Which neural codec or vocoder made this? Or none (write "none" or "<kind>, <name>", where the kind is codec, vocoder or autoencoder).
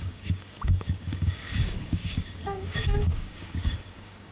codec, DAC